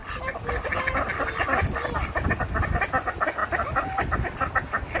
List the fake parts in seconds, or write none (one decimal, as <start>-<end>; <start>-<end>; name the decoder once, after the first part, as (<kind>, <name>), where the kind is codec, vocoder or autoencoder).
none